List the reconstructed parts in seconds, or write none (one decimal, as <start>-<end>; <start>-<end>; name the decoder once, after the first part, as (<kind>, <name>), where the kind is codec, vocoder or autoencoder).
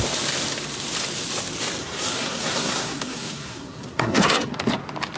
1.8-4.6 (codec, SNAC)